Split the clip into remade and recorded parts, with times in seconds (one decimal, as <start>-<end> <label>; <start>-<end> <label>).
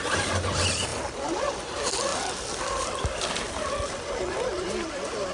0.0-0.9 recorded; 0.9-1.4 remade; 1.4-2.1 recorded; 2.1-5.3 remade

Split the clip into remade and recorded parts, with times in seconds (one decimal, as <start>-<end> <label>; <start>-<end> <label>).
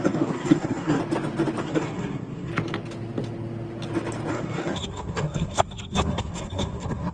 0.0-1.0 remade; 1.0-1.6 recorded; 1.6-2.5 remade; 2.5-4.3 recorded; 4.3-7.1 remade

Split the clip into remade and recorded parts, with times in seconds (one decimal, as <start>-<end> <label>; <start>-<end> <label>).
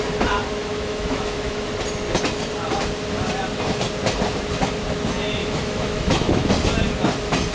0.0-0.6 recorded; 0.6-1.7 remade; 1.7-5.4 recorded; 5.4-6.5 remade; 6.5-7.5 recorded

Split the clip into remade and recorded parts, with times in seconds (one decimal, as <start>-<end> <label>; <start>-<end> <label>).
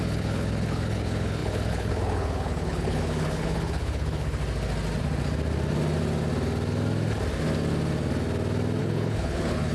0.0-4.4 remade; 4.4-8.8 recorded; 8.8-9.7 remade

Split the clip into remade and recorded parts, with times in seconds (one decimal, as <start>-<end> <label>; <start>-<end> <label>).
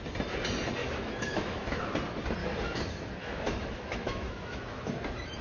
0.0-0.8 recorded; 0.8-1.8 remade; 1.8-2.4 recorded; 2.4-4.9 remade; 4.9-5.4 recorded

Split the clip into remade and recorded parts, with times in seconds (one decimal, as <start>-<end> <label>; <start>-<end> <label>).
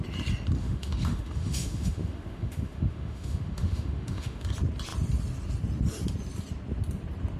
0.0-0.6 recorded; 0.6-4.5 remade; 4.5-7.4 recorded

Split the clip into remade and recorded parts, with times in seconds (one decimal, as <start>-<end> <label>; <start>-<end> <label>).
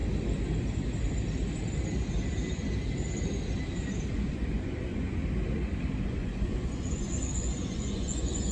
0.0-4.1 recorded; 4.1-5.2 remade; 5.2-6.0 recorded; 6.0-8.5 remade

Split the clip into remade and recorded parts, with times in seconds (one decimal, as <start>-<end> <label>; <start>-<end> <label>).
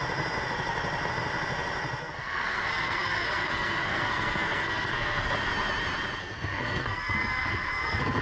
0.0-2.0 recorded; 2.0-5.3 remade; 5.3-6.2 recorded; 6.2-8.2 remade